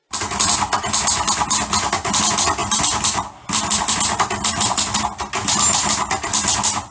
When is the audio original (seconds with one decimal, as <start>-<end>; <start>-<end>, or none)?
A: 0.0-2.6; 3.8-5.4; 6.0-6.9